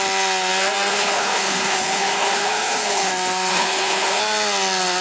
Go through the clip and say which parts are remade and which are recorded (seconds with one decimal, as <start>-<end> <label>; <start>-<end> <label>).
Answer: 0.0-0.9 recorded; 0.9-3.1 remade; 3.1-3.5 recorded; 3.5-4.2 remade; 4.2-5.0 recorded